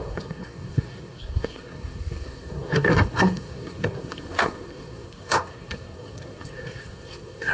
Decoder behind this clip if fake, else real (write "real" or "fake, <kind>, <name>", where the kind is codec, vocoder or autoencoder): fake, codec, SNAC